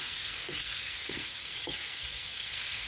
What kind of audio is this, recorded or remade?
remade